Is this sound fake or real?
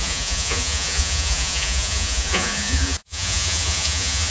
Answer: fake